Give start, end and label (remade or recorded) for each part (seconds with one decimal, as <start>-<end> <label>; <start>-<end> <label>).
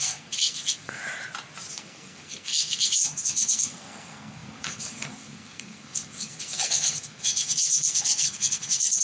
0.0-1.0 remade; 1.0-1.7 recorded; 1.7-9.0 remade